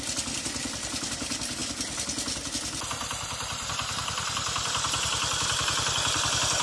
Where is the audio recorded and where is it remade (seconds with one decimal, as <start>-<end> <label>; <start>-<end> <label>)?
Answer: 0.0-1.6 remade; 1.6-2.5 recorded; 2.5-6.6 remade